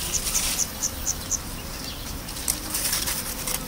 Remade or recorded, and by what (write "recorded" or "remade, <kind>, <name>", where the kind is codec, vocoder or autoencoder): recorded